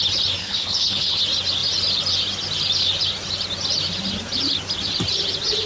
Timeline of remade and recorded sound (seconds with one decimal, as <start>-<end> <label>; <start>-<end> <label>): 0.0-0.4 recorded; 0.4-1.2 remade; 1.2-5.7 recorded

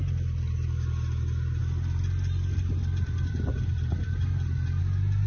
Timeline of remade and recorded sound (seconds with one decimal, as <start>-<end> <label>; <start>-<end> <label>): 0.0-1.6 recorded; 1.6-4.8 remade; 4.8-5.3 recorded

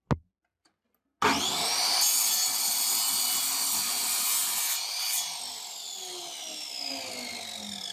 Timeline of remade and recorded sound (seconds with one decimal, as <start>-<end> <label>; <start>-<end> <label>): 0.0-7.9 recorded